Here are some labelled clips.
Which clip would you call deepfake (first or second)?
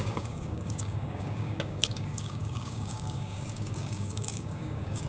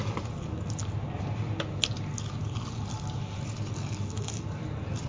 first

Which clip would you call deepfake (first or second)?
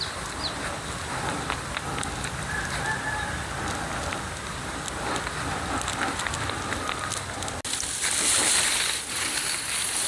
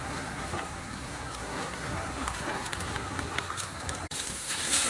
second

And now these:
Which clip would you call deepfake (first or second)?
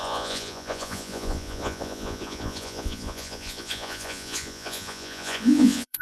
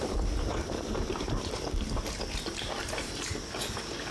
first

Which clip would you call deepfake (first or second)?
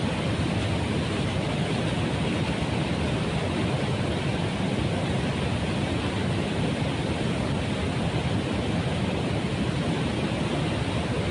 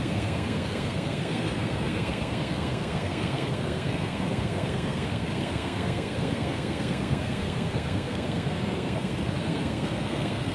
second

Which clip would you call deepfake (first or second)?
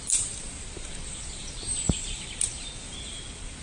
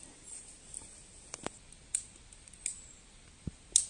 first